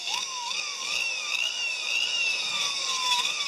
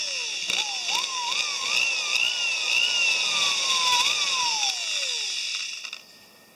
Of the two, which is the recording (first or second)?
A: second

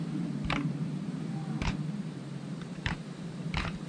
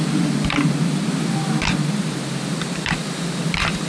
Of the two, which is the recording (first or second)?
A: second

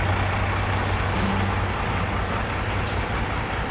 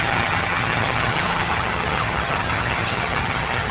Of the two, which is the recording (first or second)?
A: first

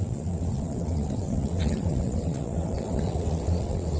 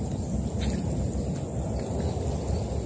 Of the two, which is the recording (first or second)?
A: second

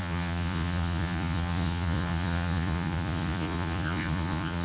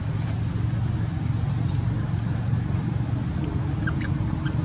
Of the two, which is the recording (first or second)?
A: second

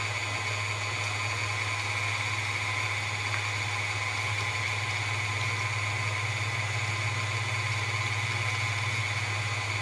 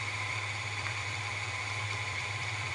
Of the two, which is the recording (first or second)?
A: first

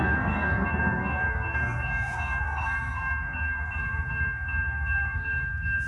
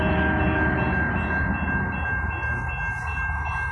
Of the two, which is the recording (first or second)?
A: second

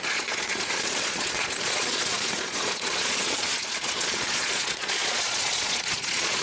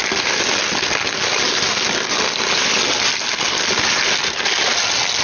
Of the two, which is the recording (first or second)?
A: second